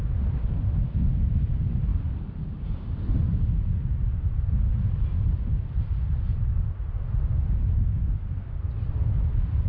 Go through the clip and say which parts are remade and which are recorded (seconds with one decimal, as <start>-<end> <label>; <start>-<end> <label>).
0.0-4.7 recorded; 4.7-7.3 remade; 7.3-9.7 recorded